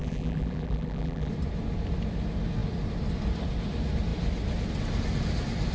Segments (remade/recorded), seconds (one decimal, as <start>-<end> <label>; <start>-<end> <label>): 0.0-1.3 remade; 1.3-5.7 recorded